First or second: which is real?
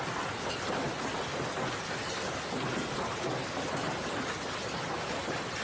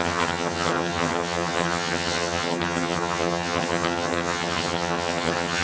first